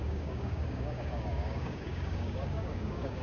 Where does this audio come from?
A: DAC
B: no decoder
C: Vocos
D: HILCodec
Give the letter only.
A